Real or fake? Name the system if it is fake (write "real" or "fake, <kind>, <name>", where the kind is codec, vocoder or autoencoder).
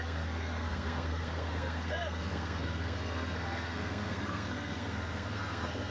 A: fake, codec, SNAC